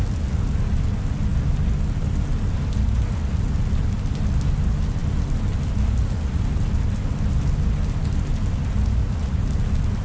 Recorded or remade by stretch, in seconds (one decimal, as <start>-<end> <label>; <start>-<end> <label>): 0.0-10.0 recorded